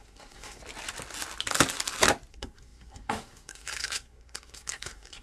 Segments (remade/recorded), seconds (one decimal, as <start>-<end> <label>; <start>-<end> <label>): 0.0-0.6 remade; 0.6-2.3 recorded; 2.3-5.2 remade